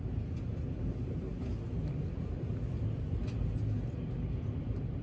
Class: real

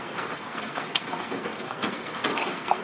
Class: fake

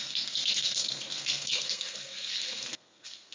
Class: fake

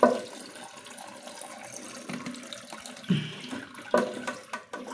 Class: real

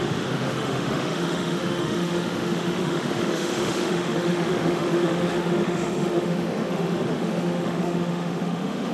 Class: fake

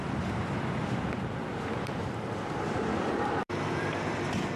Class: fake